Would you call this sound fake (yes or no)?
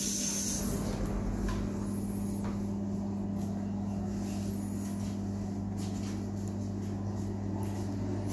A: no